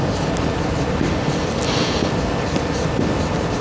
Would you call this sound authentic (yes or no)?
yes